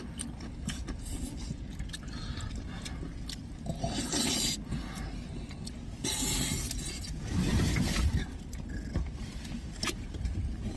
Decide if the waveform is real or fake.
real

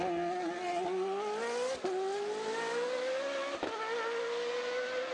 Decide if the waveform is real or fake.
real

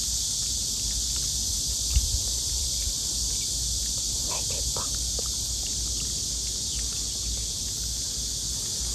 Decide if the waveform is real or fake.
real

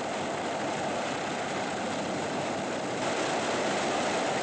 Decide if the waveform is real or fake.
real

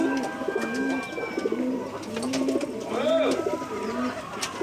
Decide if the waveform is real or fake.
real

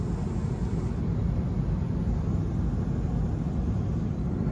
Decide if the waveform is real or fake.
real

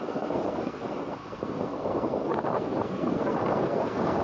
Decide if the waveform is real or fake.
fake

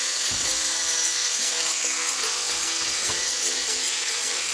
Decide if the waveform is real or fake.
fake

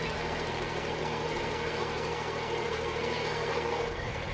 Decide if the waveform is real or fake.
fake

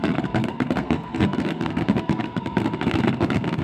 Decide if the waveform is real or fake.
fake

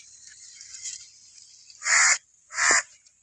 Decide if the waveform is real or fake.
real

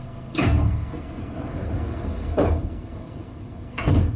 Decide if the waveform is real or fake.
fake